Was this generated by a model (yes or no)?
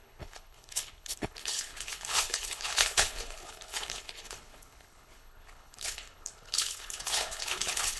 yes